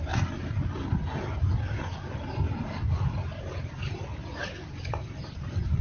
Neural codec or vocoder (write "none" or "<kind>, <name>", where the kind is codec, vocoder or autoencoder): none